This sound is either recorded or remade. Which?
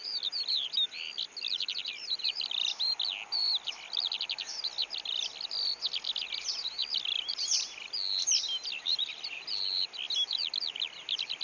recorded